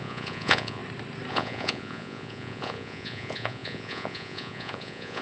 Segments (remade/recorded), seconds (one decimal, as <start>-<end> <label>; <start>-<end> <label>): 0.0-0.8 remade; 0.8-1.3 recorded; 1.3-5.2 remade